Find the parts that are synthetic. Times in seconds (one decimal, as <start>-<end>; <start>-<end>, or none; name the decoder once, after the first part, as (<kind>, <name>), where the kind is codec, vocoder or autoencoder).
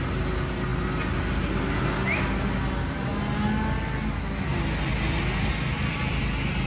none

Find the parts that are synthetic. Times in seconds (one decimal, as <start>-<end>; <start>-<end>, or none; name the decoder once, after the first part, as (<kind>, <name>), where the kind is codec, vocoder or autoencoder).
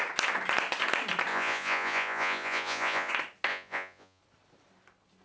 1.3-3.1 (vocoder, Vocos); 3.5-4.2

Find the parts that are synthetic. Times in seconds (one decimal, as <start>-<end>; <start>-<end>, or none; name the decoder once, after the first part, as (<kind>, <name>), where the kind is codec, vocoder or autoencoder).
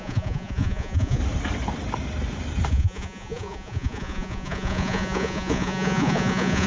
0.0-1.2 (vocoder, Vocos); 2.7-6.7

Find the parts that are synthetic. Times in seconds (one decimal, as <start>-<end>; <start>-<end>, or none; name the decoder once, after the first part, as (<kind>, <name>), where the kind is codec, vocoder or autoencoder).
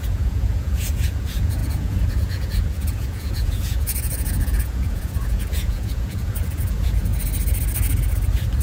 0.0-7.1 (vocoder, Vocos)